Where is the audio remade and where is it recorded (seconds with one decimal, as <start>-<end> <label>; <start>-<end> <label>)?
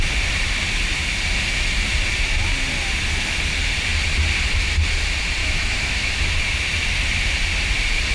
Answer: 0.0-5.4 recorded; 5.4-6.1 remade; 6.1-8.1 recorded